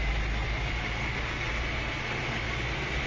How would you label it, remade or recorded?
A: recorded